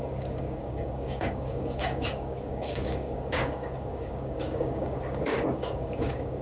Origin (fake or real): fake